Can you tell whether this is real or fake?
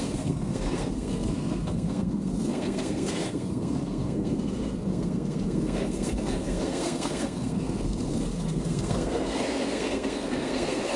fake